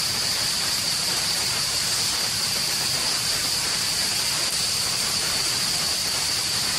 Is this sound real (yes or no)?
no